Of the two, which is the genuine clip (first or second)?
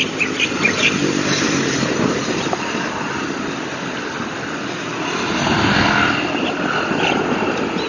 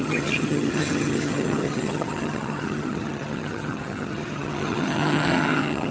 first